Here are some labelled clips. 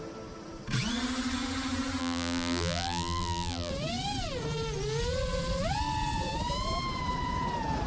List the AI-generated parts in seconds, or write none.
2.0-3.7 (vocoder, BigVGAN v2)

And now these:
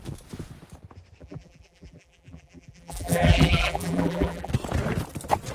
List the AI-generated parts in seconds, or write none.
1.2-4.5 (vocoder, BigVGAN v2)

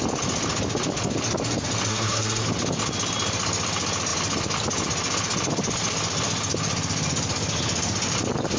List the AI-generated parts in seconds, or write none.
1.9-2.4 (codec, SNAC)

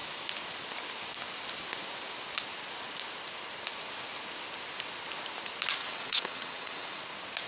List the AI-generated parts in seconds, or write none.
5.8-7.0 (vocoder, WaveNeXt)

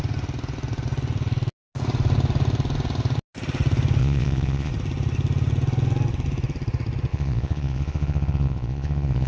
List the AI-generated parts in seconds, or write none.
4.0-4.7 (vocoder, Vocos); 7.1-9.3

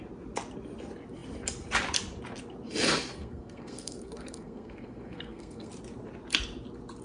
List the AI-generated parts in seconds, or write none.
3.1-5.7 (codec, SNAC)